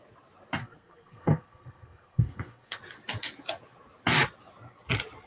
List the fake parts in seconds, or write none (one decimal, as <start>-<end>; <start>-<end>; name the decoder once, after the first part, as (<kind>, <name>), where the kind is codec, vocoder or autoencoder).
0.6-2.8 (codec, SNAC)